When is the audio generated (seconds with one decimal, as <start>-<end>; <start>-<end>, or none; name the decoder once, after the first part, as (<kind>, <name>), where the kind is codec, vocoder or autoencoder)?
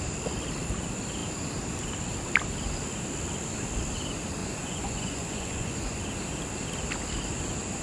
4.4-6.0 (vocoder, Vocos)